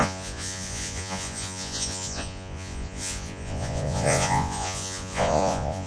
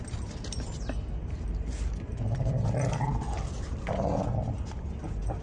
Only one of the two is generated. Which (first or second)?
first